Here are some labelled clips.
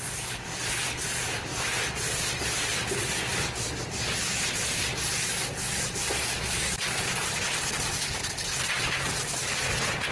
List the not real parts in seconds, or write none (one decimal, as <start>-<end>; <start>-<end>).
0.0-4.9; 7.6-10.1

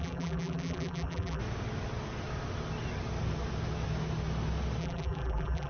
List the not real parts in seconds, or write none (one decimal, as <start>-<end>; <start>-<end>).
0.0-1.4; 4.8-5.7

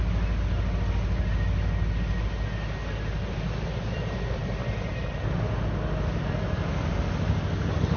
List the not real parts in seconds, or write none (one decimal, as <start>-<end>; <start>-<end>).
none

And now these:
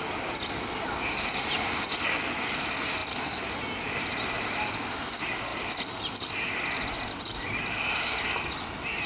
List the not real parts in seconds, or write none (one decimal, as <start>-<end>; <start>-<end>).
3.0-4.8; 5.5-6.3

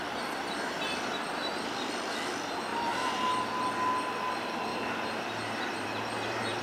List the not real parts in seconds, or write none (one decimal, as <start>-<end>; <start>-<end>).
2.7-3.3; 4.7-6.6

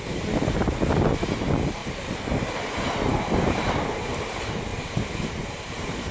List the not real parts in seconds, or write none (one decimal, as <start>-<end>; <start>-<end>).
1.8-2.5; 3.1-4.1; 4.7-6.1